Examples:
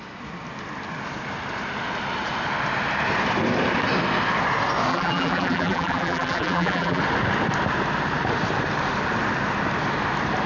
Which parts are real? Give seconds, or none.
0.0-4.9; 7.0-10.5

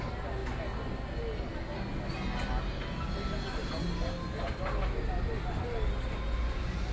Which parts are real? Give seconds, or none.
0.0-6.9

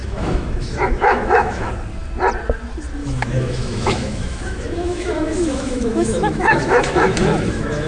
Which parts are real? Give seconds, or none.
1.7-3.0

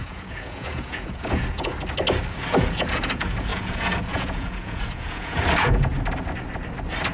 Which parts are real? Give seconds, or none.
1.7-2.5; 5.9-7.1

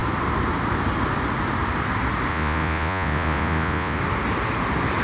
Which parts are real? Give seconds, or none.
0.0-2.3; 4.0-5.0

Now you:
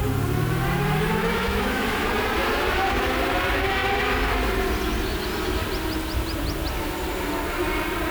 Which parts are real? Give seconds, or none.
0.0-1.1; 2.1-8.1